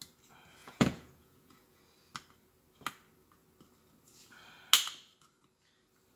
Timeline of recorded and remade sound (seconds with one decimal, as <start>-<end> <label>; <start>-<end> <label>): 0.0-0.6 recorded; 0.6-1.8 remade; 1.8-6.2 recorded